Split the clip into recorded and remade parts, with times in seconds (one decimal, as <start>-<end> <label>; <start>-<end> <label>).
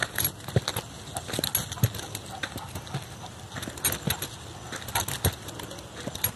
0.0-0.5 remade; 0.5-6.4 recorded